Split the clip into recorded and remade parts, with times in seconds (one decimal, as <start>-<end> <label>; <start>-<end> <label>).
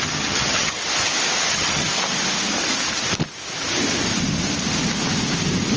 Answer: 0.0-0.8 remade; 0.8-1.5 recorded; 1.5-1.9 remade; 1.9-5.8 recorded